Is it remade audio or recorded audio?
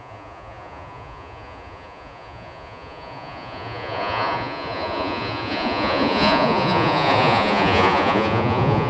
remade